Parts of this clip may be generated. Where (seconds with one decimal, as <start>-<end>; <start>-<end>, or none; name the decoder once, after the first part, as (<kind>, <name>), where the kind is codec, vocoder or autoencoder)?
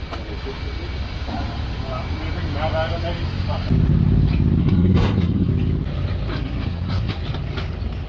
4.6-5.5 (codec, SNAC); 6.3-7.2